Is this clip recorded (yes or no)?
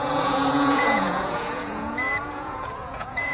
no